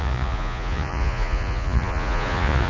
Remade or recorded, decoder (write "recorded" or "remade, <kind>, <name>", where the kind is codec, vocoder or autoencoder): remade, vocoder, Vocos